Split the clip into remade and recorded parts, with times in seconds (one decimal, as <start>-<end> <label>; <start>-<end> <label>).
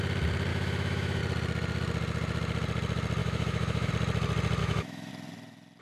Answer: 0.0-0.5 recorded; 0.5-1.2 remade; 1.2-3.2 recorded; 3.2-3.9 remade; 3.9-4.6 recorded; 4.6-5.1 remade; 5.1-5.8 recorded